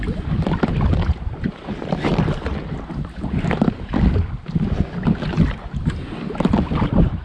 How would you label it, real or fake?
real